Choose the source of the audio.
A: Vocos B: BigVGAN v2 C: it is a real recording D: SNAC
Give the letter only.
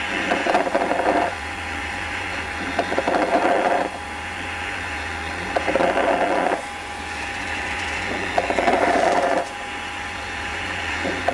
A